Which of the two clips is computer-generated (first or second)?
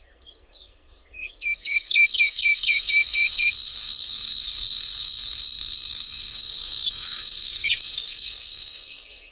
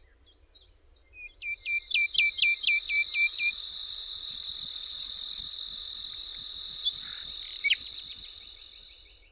first